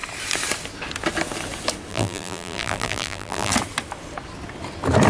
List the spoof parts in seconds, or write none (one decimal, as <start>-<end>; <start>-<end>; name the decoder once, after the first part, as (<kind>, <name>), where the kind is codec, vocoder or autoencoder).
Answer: 1.9-3.5 (vocoder, BigVGAN v2)